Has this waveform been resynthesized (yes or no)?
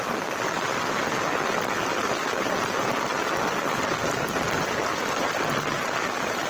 no